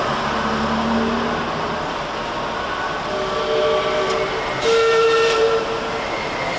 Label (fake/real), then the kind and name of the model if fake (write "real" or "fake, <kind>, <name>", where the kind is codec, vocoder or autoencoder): real